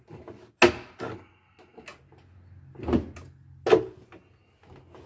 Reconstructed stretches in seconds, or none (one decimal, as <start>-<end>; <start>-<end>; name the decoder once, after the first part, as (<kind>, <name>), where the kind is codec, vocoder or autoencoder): none